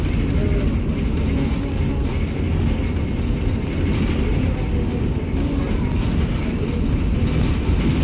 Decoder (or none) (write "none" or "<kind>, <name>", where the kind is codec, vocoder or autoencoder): none